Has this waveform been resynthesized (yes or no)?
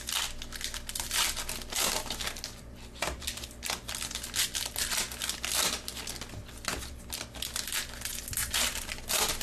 no